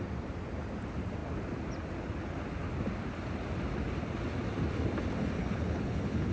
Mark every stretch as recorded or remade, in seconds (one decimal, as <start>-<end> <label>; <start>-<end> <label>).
0.0-5.4 recorded; 5.4-6.3 remade

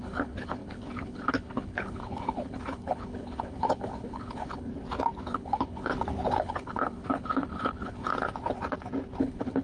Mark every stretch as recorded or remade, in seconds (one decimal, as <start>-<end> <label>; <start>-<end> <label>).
0.0-4.7 remade; 4.7-5.2 recorded; 5.2-5.9 remade; 5.9-6.4 recorded; 6.4-8.1 remade; 8.1-9.2 recorded; 9.2-9.6 remade